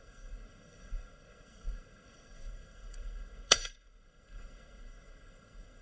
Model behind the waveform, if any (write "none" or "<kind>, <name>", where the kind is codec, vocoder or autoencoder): codec, SNAC